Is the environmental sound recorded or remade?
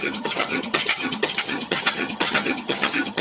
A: remade